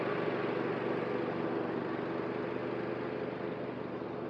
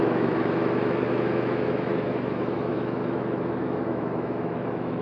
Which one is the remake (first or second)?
second